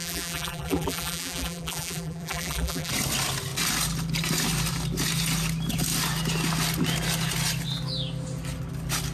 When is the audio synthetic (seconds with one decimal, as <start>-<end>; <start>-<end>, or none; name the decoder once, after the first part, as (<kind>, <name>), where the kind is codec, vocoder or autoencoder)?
0.0-2.9 (vocoder, BigVGAN v2)

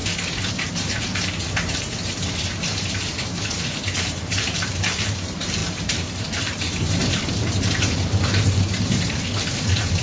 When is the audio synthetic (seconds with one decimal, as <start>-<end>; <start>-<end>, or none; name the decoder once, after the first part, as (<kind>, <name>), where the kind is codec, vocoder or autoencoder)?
0.5-10.0 (vocoder, BigVGAN v2)

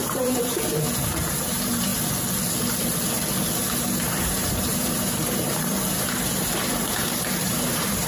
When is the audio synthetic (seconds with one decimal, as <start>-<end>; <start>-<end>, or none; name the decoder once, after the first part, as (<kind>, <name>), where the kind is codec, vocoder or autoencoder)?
0.0-1.9 (vocoder, BigVGAN v2); 3.8-8.1

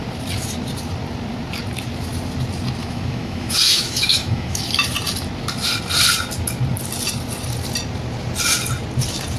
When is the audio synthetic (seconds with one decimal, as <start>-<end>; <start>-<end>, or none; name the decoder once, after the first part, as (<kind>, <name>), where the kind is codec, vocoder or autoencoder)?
2.8-4.6 (autoencoder, DAC-VAE)

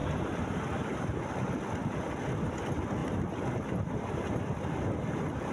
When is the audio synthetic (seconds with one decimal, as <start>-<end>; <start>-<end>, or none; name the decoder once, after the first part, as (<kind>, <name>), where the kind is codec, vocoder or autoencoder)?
0.0-1.2 (vocoder, BigVGAN v2); 3.0-4.4

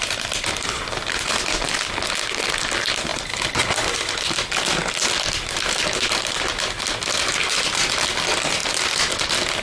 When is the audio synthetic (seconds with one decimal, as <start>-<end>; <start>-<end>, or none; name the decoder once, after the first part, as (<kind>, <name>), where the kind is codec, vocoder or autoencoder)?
none

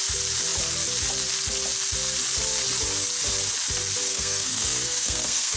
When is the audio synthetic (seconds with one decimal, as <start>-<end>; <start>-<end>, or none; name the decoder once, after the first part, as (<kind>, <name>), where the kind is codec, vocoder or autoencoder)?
4.1-5.6 (codec, SNAC)